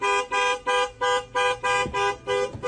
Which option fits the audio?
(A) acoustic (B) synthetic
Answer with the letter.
A